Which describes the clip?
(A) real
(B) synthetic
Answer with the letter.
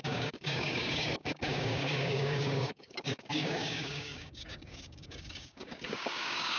B